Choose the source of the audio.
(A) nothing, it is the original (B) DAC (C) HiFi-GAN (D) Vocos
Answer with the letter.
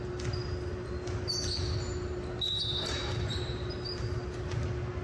A